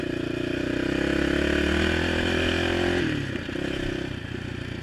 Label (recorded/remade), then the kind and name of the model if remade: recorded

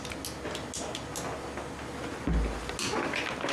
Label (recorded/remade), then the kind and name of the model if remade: recorded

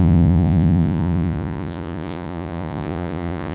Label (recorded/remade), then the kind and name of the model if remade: remade, vocoder, Vocos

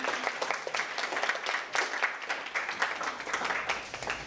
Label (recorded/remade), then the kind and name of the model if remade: recorded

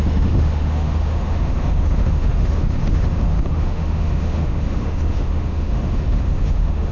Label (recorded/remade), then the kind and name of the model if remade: remade, autoencoder, DAC-VAE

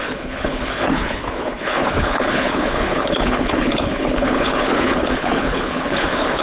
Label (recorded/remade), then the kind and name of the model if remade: remade, codec, HILCodec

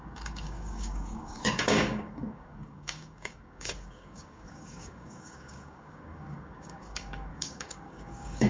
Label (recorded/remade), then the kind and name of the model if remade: remade, codec, DAC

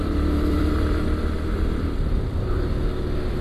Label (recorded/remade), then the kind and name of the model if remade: remade, vocoder, BigVGAN v2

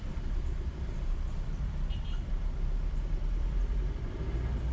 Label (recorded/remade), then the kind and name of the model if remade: remade, vocoder, BigVGAN v2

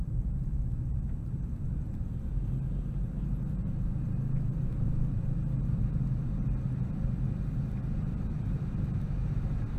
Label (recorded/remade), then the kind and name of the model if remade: recorded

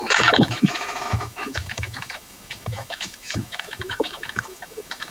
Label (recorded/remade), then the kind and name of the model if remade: remade, autoencoder, DAC-VAE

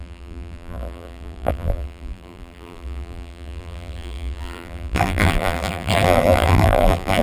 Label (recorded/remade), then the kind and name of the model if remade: remade, vocoder, BigVGAN v2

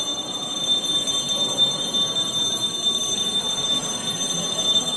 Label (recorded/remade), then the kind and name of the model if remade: recorded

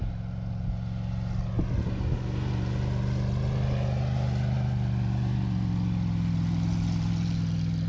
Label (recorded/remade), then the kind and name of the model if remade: recorded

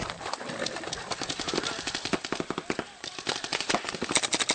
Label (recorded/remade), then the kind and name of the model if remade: remade, vocoder, BigVGAN v2